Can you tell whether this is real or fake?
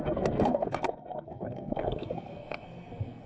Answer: fake